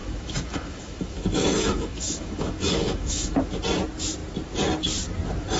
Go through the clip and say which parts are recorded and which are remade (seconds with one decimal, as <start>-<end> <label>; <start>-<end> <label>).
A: 0.0-3.4 remade; 3.4-5.6 recorded